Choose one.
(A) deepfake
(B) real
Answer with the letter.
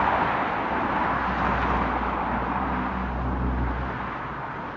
B